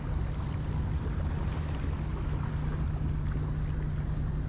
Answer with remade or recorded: recorded